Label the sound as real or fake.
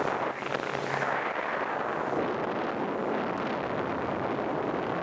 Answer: real